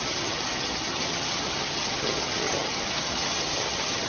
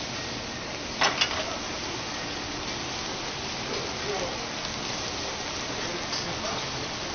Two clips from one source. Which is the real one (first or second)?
second